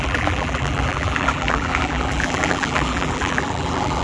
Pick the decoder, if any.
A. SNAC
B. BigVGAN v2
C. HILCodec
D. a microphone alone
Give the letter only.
B